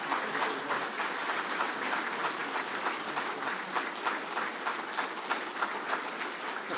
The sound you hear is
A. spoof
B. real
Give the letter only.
B